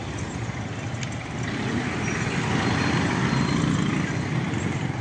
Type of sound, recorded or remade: recorded